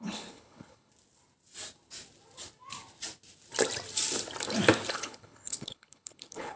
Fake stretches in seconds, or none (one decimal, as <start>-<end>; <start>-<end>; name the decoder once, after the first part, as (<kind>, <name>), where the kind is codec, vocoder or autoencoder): 0.0-0.9 (codec, HILCodec); 4.9-6.6